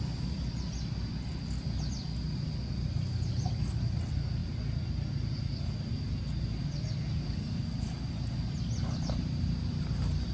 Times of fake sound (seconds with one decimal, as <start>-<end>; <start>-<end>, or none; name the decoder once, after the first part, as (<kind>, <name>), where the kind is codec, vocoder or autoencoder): none